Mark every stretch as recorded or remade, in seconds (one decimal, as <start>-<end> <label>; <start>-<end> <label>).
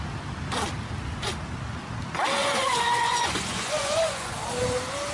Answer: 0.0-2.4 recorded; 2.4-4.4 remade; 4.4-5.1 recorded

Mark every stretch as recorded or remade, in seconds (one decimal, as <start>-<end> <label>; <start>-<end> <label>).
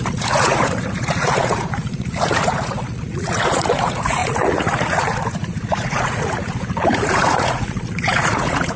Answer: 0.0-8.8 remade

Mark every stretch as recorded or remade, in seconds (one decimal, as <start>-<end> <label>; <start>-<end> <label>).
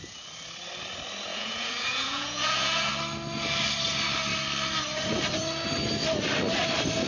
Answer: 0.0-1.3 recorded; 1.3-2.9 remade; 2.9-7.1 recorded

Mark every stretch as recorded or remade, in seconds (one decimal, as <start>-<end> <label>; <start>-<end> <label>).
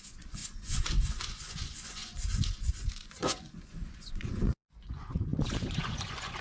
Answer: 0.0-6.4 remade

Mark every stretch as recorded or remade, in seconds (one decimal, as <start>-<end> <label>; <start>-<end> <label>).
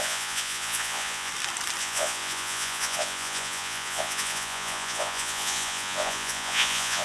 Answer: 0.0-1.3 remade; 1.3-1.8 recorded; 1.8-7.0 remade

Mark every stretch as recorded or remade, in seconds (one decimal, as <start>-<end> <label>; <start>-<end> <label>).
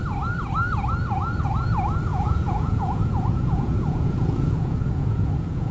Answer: 0.0-2.1 recorded; 2.1-5.7 remade